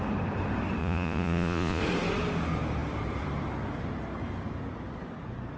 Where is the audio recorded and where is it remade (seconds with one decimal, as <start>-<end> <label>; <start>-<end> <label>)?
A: 0.0-0.8 recorded; 0.8-1.8 remade; 1.8-5.6 recorded